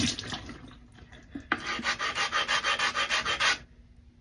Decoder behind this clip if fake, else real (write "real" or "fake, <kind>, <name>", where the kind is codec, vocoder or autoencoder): real